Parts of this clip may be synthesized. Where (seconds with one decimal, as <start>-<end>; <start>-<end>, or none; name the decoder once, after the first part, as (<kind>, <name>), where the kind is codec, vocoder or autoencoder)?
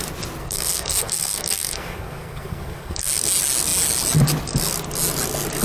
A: 0.4-3.1 (codec, SNAC)